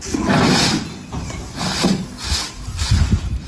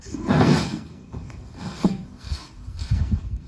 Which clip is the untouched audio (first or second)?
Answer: first